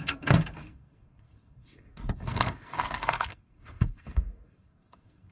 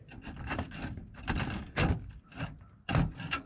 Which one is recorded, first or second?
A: second